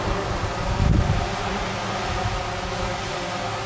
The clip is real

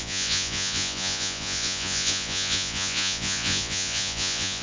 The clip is fake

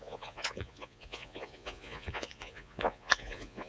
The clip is fake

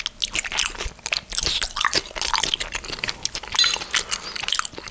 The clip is real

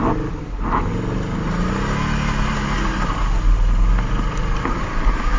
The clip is real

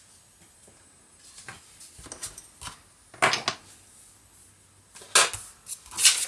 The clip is real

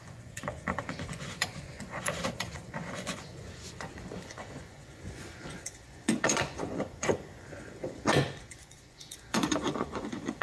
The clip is fake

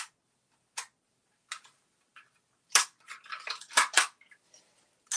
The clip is real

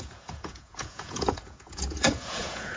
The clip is fake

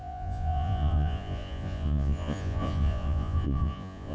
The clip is fake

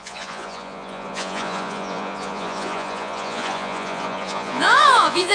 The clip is fake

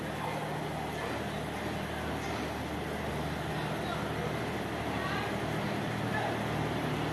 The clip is real